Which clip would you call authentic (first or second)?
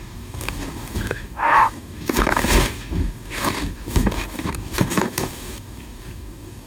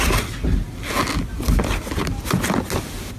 second